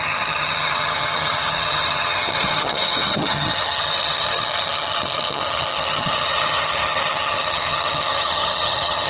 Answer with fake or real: fake